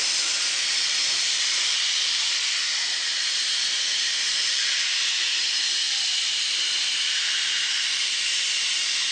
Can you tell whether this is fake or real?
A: fake